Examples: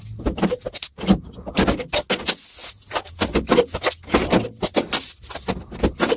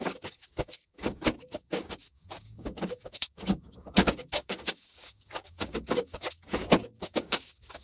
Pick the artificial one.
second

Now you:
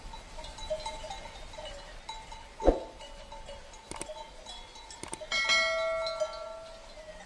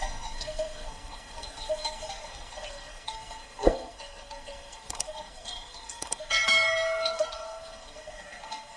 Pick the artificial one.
second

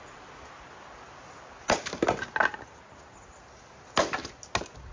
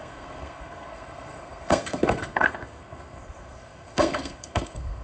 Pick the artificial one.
second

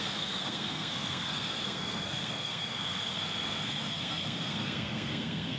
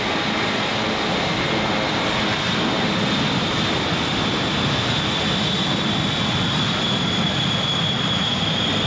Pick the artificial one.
first